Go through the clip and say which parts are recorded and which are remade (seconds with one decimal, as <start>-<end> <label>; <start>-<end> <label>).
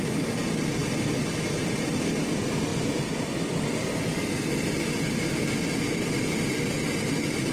0.0-7.5 recorded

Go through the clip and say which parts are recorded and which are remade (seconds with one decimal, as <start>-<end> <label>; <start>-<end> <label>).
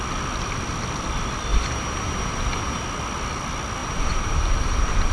0.0-1.5 recorded; 1.5-2.8 remade; 2.8-3.8 recorded; 3.8-5.1 remade